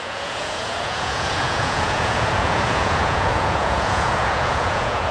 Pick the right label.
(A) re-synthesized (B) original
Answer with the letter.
A